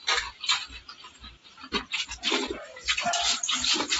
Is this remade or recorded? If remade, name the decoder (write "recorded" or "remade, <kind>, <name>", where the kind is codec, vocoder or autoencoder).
remade, vocoder, BigVGAN v2